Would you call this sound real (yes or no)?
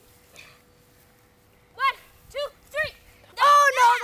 yes